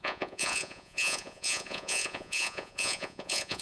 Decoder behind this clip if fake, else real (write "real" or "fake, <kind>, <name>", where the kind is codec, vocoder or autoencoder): fake, vocoder, Vocos